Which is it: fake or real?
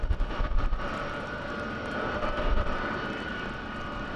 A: real